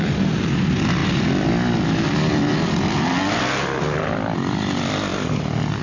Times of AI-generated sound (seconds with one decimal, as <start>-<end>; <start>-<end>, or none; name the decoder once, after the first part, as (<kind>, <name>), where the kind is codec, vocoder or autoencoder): none